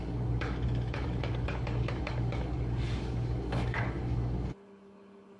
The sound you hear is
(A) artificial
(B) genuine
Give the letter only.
A